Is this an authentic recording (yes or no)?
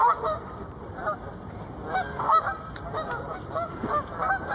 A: yes